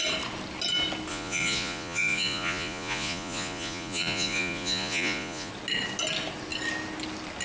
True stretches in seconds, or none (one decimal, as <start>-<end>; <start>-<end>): 0.0-1.1; 5.5-7.4